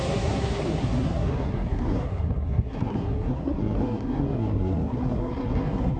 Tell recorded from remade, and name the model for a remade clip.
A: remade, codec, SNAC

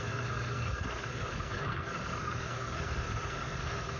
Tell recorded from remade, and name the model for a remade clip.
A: remade, codec, SNAC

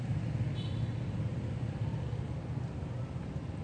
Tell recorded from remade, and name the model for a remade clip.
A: recorded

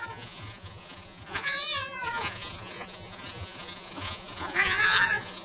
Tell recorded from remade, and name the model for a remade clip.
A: remade, vocoder, Vocos